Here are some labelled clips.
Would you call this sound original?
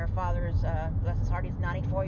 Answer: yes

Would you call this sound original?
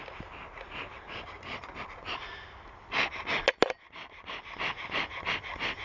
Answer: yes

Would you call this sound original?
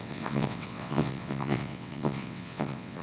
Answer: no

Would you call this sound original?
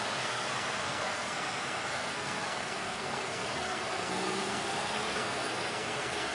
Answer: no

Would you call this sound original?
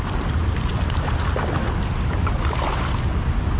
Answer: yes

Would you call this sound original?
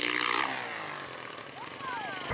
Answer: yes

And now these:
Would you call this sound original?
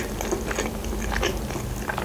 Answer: yes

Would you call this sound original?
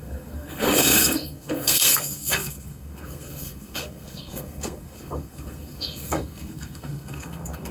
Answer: no